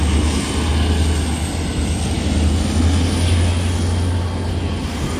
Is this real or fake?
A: real